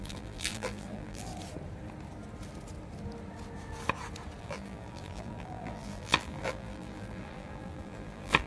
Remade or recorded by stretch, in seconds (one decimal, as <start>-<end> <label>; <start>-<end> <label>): 0.0-1.3 remade; 1.3-4.4 recorded; 4.4-8.5 remade